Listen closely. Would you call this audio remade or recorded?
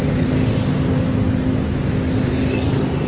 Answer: recorded